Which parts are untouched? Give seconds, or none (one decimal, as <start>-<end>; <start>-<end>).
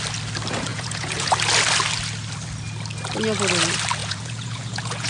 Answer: 0.0-0.7; 1.3-4.0